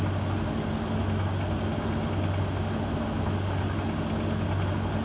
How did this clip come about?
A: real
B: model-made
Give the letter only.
A